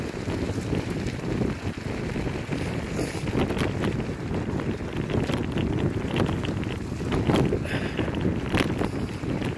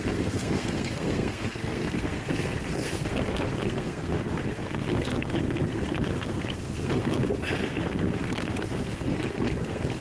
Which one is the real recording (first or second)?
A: first